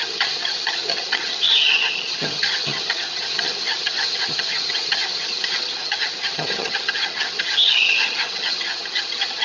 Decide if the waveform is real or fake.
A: fake